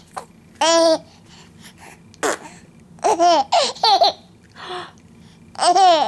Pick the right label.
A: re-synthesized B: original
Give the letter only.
B